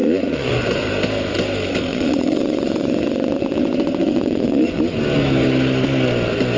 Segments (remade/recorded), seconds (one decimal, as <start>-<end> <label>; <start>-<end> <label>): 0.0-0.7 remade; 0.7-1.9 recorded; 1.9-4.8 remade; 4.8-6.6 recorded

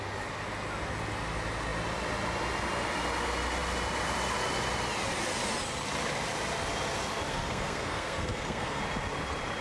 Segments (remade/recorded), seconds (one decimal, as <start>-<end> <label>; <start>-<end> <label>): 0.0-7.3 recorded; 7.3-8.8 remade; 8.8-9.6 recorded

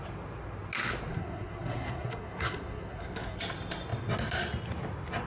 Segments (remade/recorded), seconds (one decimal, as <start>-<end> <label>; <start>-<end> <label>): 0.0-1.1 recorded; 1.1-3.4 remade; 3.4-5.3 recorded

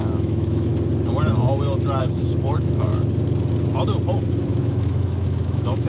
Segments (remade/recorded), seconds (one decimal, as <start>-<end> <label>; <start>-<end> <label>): 0.0-0.7 remade; 0.7-2.0 recorded; 2.0-2.9 remade; 2.9-4.3 recorded; 4.3-5.9 remade

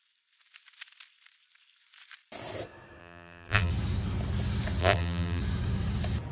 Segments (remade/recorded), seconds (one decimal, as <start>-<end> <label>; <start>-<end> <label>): 0.0-3.0 recorded; 3.0-3.7 remade; 3.7-4.8 recorded; 4.8-5.4 remade; 5.4-6.3 recorded

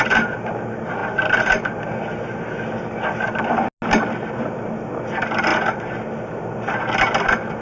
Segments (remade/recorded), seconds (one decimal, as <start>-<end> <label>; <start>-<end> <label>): 0.0-7.6 recorded